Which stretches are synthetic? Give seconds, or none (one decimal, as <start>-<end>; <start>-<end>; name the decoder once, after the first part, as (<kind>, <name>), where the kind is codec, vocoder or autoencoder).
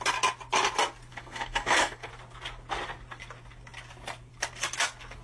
1.1-2.1 (codec, SNAC)